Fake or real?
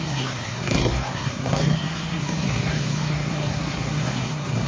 fake